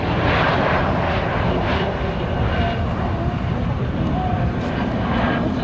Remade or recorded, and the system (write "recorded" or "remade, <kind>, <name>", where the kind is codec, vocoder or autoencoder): recorded